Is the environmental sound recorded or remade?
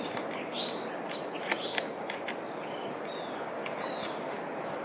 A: recorded